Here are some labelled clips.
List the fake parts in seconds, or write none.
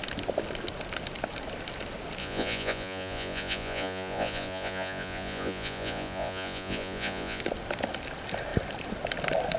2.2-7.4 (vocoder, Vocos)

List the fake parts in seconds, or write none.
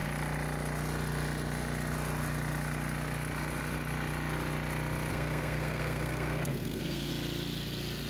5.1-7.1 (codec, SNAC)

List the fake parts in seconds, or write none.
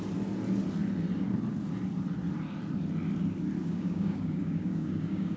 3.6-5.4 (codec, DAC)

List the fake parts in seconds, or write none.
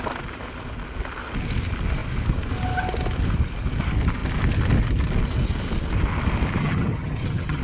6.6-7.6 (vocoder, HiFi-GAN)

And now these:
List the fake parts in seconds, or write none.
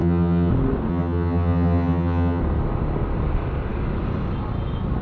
0.0-0.5 (vocoder, HiFi-GAN); 0.9-2.4